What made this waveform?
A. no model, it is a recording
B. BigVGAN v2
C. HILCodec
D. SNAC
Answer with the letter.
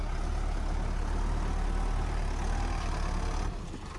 A